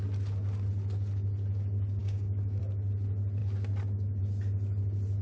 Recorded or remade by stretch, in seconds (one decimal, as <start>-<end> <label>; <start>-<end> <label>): 0.0-2.0 recorded; 2.0-2.6 remade; 2.6-5.2 recorded